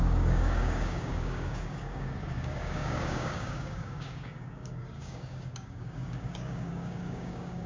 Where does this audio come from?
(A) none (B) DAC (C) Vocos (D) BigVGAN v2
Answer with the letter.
B